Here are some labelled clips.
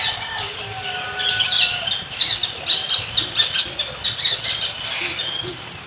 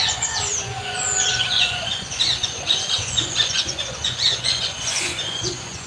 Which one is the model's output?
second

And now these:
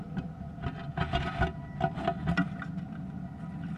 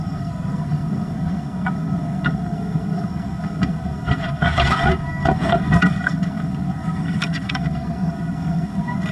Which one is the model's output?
second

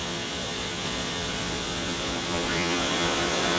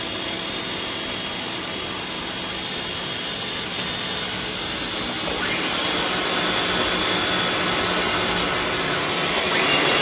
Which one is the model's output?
first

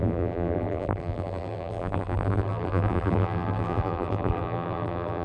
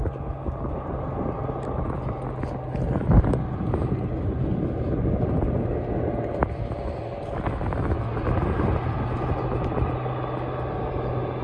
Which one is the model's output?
first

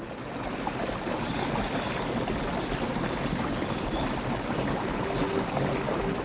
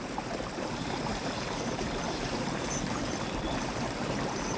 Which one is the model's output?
second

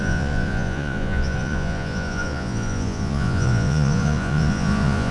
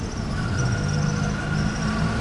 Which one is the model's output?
first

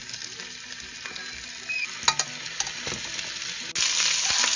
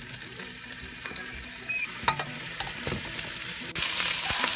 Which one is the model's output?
second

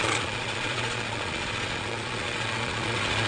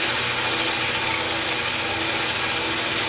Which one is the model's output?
first